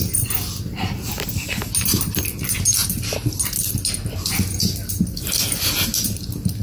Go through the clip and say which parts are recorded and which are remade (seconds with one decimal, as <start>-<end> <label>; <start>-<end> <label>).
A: 0.0-6.6 recorded